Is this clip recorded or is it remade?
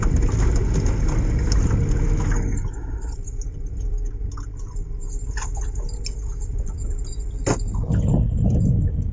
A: recorded